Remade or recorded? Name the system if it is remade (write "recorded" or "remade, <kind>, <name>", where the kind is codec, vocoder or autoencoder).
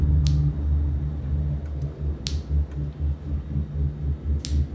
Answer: recorded